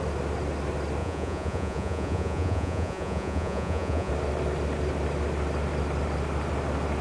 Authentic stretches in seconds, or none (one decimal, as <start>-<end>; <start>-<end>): 0.0-1.0; 4.1-7.0